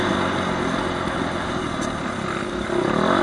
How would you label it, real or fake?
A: real